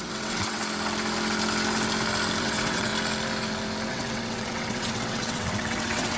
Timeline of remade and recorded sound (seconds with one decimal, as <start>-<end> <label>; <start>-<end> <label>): 0.0-0.6 remade; 0.6-2.4 recorded; 2.4-2.9 remade; 2.9-3.9 recorded; 3.9-6.2 remade